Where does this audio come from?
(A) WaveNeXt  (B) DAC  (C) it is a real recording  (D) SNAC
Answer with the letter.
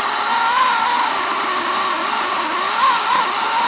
C